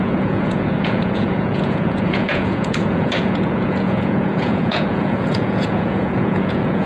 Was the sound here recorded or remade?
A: remade